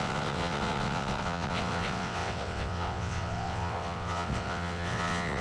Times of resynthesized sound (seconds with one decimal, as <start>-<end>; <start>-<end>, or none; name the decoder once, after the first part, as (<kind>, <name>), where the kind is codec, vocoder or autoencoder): 0.0-5.4 (vocoder, WaveNeXt)